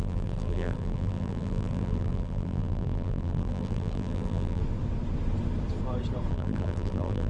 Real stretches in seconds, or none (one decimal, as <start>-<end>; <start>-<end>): 4.6-6.3